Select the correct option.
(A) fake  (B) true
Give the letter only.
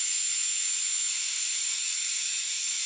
A